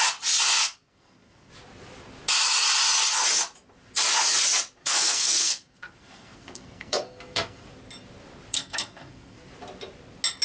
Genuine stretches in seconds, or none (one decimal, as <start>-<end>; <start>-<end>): 0.0-0.6; 1.5-4.8; 7.7-8.5; 9.5-10.4